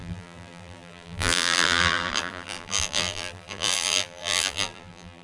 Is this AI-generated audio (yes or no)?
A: yes